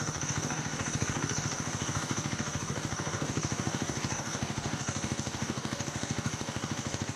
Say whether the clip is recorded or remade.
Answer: remade